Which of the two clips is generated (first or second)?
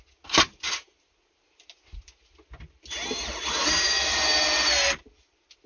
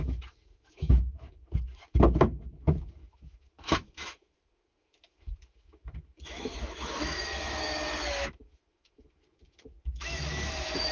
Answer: second